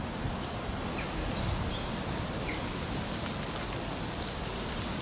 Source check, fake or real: real